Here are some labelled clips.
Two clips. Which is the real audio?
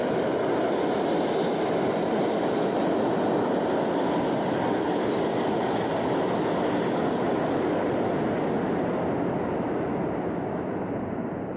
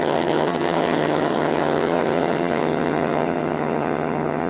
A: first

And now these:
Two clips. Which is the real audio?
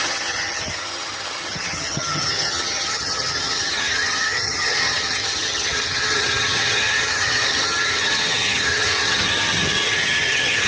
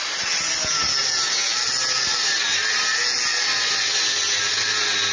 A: second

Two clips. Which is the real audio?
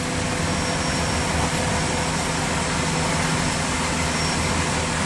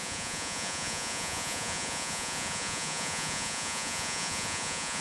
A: first